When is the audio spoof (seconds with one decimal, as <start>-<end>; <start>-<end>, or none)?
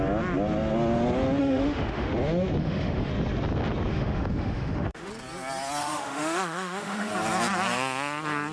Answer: 1.4-2.1; 2.6-3.1; 3.9-5.1; 5.8-7.1